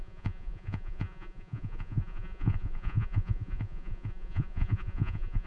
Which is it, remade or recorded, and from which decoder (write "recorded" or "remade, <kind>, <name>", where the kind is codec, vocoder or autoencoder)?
remade, vocoder, Vocos